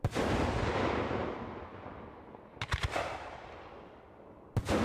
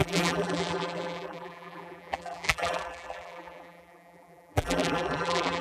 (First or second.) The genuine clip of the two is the first